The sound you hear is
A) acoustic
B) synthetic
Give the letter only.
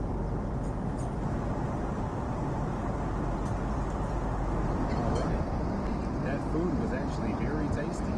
A